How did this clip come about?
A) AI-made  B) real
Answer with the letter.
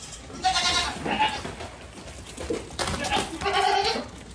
B